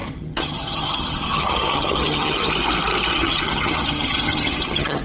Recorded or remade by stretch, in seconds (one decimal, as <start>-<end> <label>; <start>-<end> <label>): 0.0-2.5 remade; 2.5-3.1 recorded; 3.1-5.0 remade